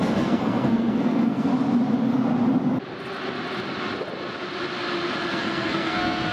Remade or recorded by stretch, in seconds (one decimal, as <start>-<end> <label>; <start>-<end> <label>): 0.0-1.5 remade; 1.5-5.3 recorded; 5.3-6.3 remade